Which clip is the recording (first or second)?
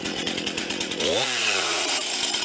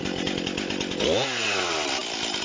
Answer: second